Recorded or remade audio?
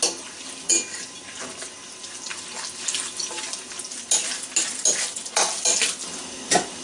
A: recorded